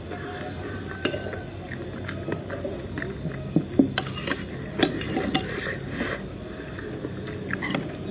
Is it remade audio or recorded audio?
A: recorded